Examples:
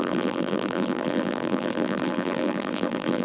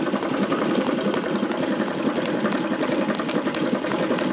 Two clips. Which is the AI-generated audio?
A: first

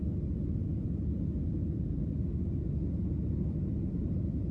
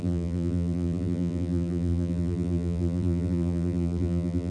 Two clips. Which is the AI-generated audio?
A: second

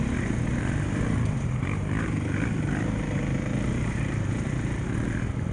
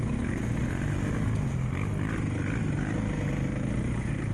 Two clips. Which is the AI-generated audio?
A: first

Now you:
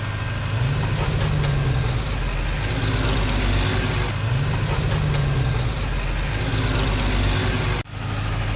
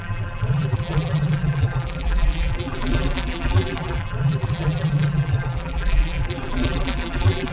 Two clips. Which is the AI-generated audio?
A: second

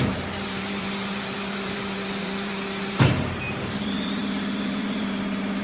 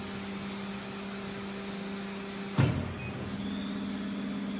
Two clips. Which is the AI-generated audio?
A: first